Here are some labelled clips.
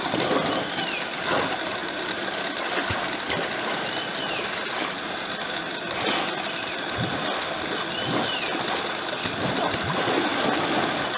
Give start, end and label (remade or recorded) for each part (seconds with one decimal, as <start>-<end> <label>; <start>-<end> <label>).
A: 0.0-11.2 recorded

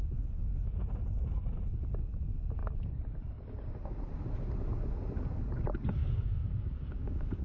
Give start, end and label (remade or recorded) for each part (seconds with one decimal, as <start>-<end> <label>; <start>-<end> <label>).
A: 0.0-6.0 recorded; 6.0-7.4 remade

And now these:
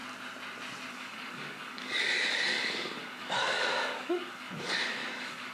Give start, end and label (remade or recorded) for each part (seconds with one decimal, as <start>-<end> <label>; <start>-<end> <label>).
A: 0.0-0.9 recorded; 0.9-5.5 remade

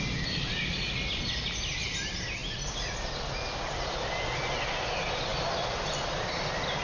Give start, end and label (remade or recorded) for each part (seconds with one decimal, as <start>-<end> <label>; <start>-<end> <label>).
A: 0.0-6.8 recorded

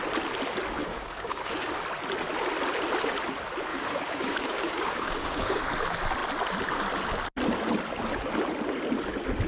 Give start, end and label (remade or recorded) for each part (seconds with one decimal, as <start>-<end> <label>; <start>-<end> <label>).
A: 0.0-0.8 recorded; 0.8-1.7 remade; 1.7-3.7 recorded; 3.7-5.6 remade; 5.6-9.5 recorded

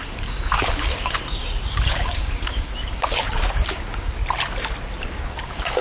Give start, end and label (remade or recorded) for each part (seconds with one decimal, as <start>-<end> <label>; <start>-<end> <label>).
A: 0.0-4.2 remade; 4.2-5.2 recorded; 5.2-5.8 remade

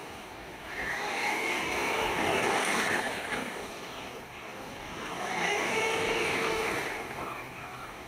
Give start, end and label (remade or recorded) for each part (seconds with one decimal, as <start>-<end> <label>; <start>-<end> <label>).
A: 0.0-8.1 remade